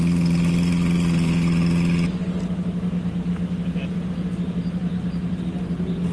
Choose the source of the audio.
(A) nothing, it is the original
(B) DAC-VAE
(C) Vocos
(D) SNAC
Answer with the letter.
A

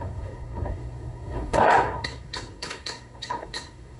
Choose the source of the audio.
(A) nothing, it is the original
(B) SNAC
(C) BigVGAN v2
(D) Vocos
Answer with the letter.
B